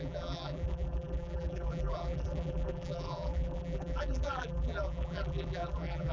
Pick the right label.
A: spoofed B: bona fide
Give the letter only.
A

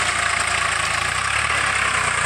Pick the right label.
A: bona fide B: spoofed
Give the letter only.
A